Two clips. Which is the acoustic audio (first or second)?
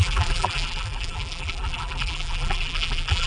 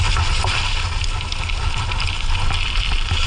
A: second